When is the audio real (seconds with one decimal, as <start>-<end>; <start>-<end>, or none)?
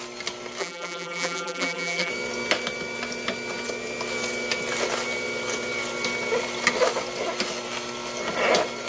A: 0.0-0.6; 2.1-8.9